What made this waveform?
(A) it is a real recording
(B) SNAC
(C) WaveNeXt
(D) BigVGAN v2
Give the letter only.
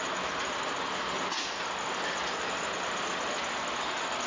A